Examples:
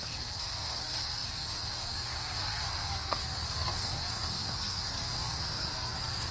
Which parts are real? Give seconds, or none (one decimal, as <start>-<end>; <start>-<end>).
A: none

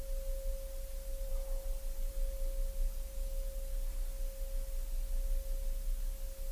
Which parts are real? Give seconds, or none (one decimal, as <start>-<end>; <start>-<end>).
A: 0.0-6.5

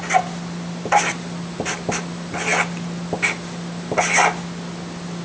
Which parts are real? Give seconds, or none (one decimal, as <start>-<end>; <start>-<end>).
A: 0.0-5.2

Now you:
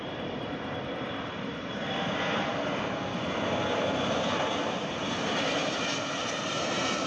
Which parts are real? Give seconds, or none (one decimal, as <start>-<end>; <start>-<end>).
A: 2.5-4.9

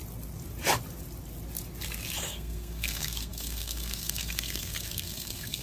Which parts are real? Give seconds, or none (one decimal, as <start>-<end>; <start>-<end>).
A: 0.0-2.2

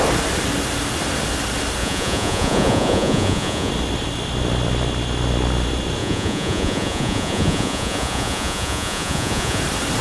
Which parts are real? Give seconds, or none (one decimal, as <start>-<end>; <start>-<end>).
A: 0.0-1.8; 3.7-6.0; 9.6-10.0

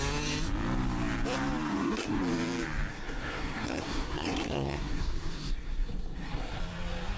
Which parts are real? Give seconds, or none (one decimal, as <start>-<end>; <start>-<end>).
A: 0.0-1.7; 2.2-2.9; 6.6-7.2

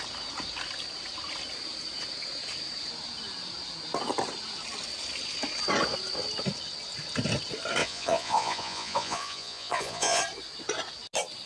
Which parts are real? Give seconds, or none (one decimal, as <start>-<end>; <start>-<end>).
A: 0.0-7.8; 10.2-11.5